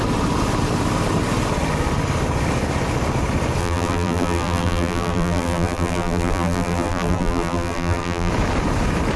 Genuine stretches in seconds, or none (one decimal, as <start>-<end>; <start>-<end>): 0.0-3.6; 8.3-9.2